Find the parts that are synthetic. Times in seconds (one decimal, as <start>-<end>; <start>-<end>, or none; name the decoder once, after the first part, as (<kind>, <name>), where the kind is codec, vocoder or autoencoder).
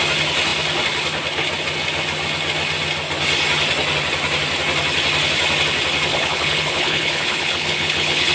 6.1-8.3 (codec, HILCodec)